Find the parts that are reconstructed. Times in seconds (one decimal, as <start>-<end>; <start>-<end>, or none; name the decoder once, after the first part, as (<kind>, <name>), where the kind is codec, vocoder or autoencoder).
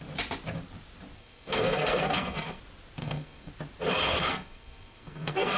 1.2-2.6 (codec, SNAC); 3.0-3.5; 4.1-5.6